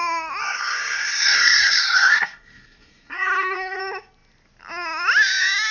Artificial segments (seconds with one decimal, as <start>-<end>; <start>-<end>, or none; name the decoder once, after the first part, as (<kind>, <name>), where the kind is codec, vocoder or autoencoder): 0.4-3.8 (codec, SNAC)